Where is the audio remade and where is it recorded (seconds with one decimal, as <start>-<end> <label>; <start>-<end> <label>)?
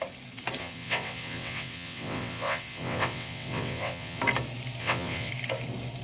0.0-0.6 recorded; 0.6-4.2 remade; 4.2-4.8 recorded; 4.8-5.3 remade; 5.3-6.0 recorded